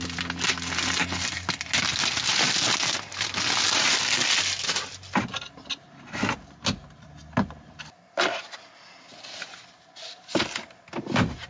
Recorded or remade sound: recorded